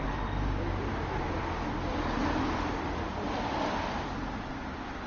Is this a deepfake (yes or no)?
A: no